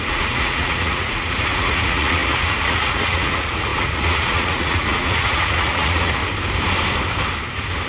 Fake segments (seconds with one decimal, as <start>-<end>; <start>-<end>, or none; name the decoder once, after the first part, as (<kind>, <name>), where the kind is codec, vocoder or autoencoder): 0.0-6.2 (vocoder, Vocos)